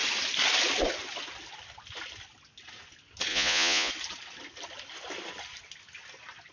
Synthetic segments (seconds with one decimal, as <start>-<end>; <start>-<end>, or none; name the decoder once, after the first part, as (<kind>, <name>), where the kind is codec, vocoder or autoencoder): 3.3-3.9 (vocoder, Vocos)